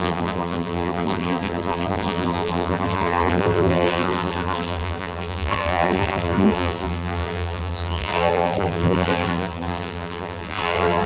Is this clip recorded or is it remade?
remade